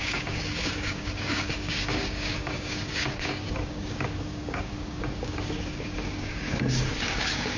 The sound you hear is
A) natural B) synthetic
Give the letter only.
B